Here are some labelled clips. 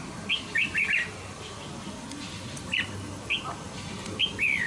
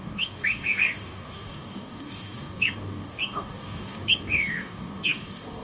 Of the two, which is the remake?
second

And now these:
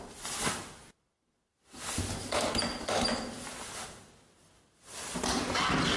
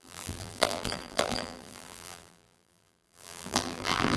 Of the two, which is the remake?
second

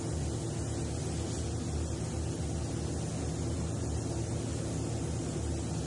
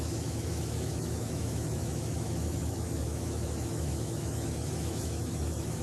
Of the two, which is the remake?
second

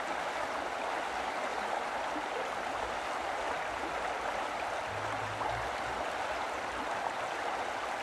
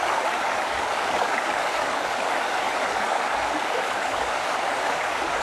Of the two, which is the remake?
second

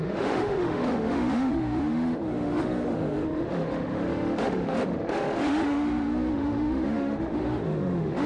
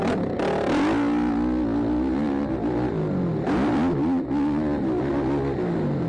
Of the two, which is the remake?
first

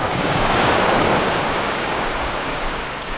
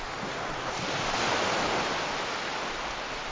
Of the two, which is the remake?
first